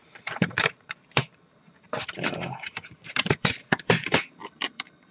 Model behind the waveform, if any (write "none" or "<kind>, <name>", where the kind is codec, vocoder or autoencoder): vocoder, BigVGAN v2